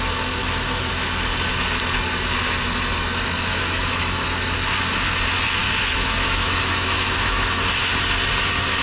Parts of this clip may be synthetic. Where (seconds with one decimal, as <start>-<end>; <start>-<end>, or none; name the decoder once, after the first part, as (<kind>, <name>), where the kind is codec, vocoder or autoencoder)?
0.4-0.9 (autoencoder, DAC-VAE); 3.5-4.2; 5.6-7.7